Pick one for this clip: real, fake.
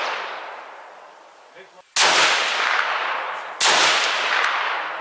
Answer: real